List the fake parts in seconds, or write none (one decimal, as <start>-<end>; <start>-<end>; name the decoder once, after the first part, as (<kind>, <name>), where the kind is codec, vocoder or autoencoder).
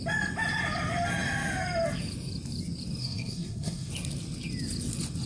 3.0-3.9 (codec, SNAC)